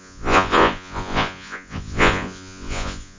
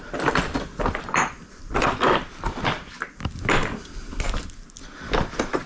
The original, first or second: second